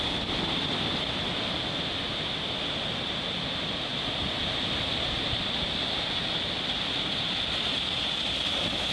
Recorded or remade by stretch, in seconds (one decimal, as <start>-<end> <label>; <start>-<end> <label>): 0.0-8.9 recorded